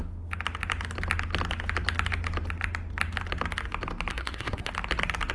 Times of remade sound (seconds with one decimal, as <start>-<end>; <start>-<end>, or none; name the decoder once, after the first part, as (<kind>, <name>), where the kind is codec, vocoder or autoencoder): 4.1-4.7 (codec, SNAC)